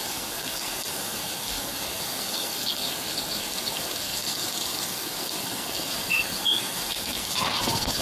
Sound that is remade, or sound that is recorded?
remade